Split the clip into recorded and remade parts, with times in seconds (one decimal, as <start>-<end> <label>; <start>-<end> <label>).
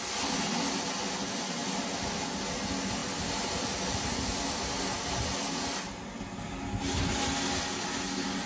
0.0-8.5 recorded